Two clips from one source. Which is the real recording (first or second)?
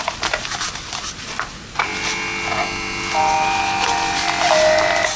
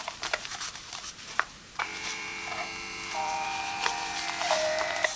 first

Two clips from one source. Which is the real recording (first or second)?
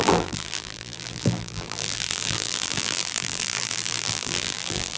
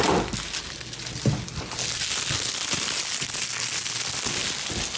second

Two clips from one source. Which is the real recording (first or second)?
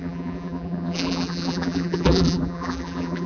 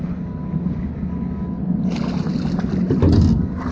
second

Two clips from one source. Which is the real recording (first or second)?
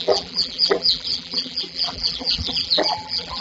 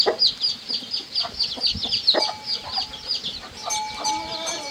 second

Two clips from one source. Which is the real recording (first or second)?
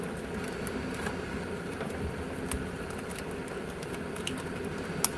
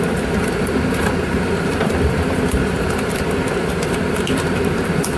first